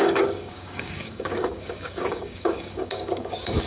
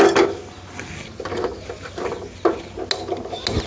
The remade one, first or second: first